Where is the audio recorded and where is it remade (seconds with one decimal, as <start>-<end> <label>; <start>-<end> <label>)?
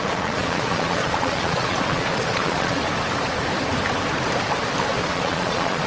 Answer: 0.0-2.8 remade; 2.8-5.1 recorded; 5.1-5.9 remade